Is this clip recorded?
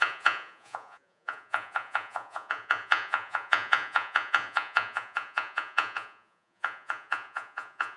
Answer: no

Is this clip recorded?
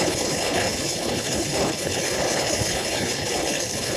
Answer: no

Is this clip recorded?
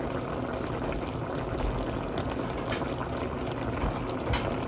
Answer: yes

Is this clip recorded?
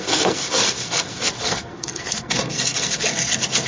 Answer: no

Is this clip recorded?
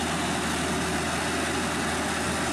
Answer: yes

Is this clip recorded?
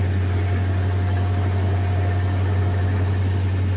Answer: yes